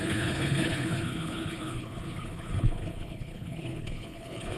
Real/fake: fake